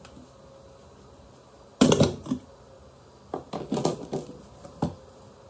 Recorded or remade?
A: recorded